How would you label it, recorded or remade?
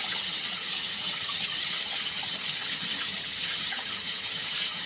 remade